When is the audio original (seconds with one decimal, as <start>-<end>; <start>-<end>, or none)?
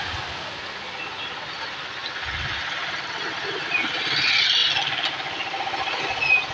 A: 0.0-6.5